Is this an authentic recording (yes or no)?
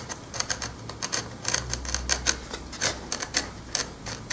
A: yes